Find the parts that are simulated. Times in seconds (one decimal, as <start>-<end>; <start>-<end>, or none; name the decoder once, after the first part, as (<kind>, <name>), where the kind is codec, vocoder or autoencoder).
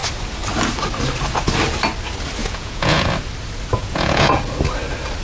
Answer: 2.4-3.1 (vocoder, Vocos); 3.8-4.4